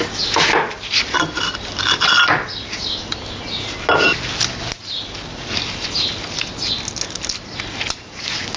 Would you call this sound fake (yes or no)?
no